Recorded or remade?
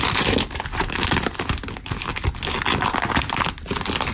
recorded